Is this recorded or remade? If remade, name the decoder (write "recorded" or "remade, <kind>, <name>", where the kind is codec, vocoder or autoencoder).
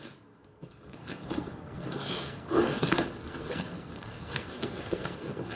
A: remade, codec, SNAC